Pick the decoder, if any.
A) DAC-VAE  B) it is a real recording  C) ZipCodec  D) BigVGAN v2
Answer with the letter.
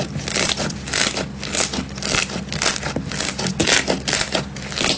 B